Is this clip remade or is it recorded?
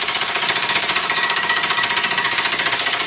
remade